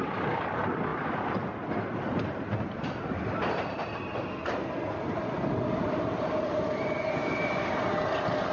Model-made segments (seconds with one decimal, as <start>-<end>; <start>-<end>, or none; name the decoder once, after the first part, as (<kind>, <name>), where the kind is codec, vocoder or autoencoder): none